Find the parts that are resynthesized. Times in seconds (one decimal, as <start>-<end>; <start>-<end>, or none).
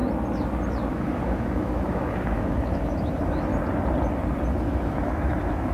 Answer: 0.9-3.5; 4.5-5.7